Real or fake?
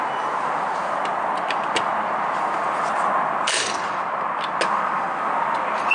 real